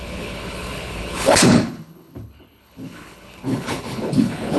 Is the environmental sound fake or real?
fake